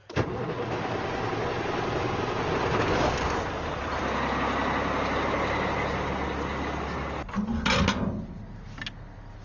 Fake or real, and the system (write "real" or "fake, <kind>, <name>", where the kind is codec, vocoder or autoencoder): real